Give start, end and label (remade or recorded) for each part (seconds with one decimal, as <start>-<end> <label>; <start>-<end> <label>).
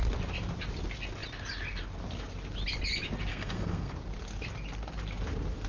0.0-3.3 recorded; 3.3-3.9 remade; 3.9-5.7 recorded